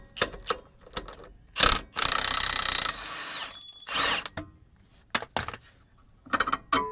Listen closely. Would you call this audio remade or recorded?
recorded